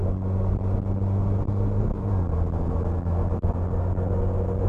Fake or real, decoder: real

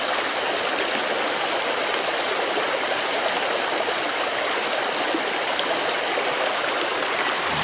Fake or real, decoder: real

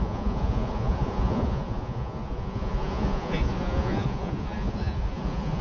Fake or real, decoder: fake, vocoder, Vocos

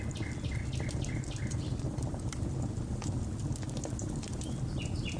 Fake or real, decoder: real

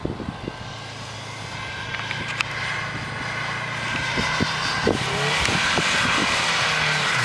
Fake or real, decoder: real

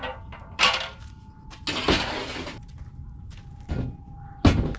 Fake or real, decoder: real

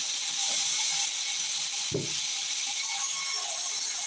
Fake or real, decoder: real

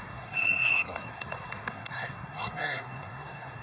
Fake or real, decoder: fake, codec, SNAC